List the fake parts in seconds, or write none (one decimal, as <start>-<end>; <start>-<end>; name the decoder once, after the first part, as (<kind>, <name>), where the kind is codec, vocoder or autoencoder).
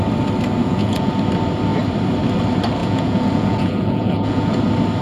0.6-1.1 (vocoder, Vocos); 2.8-4.6